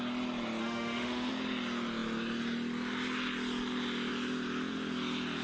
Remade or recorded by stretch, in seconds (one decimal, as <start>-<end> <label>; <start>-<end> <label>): 0.0-0.6 recorded; 0.6-1.3 remade; 1.3-5.4 recorded